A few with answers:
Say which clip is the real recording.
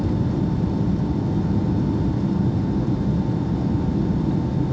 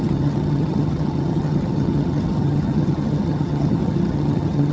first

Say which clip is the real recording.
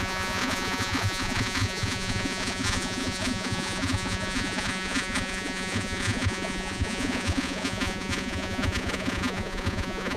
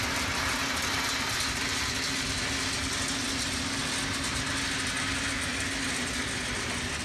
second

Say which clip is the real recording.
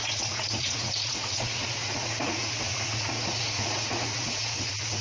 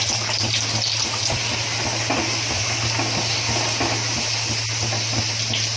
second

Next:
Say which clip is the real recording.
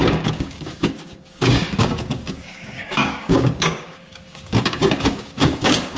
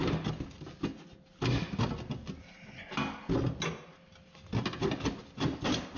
second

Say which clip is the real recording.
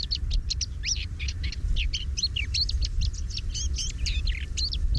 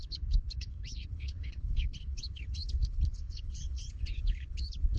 first